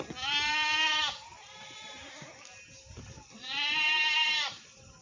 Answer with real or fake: fake